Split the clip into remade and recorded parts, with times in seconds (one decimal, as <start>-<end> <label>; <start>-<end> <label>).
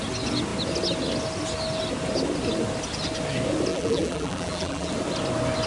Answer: 0.0-3.7 recorded; 3.7-4.9 remade; 4.9-5.7 recorded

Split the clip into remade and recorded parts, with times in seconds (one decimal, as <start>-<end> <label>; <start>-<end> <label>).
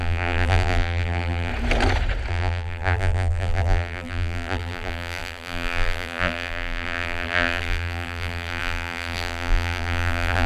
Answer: 0.0-1.5 remade; 1.5-2.3 recorded; 2.3-10.5 remade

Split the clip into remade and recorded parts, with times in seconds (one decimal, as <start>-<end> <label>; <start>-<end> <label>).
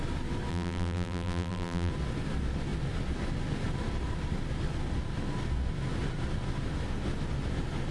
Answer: 0.0-0.5 recorded; 0.5-1.9 remade; 1.9-7.9 recorded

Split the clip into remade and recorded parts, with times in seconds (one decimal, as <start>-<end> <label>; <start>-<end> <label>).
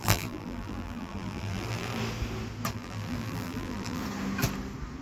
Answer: 0.0-2.0 remade; 2.0-2.7 recorded; 2.7-4.0 remade; 4.0-5.0 recorded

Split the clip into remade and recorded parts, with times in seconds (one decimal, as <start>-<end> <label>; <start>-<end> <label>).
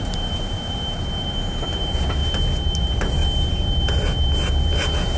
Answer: 0.0-2.2 remade; 2.2-2.8 recorded; 2.8-3.2 remade; 3.2-5.2 recorded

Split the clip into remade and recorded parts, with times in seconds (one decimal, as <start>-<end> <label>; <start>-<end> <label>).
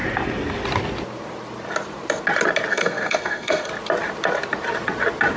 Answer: 0.0-2.7 recorded; 2.7-3.7 remade; 3.7-5.4 recorded